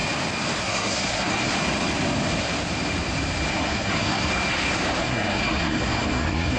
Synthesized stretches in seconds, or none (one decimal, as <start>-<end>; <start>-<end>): 0.6-1.5; 3.5-4.3; 5.0-6.6